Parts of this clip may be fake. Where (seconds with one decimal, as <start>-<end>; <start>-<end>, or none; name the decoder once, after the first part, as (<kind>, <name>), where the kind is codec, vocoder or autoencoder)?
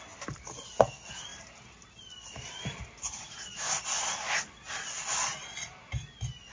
none